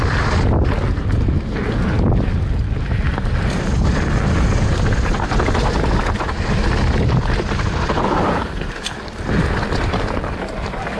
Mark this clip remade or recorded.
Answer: recorded